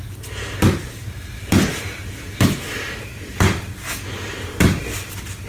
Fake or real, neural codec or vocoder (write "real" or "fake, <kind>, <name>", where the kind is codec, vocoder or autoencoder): real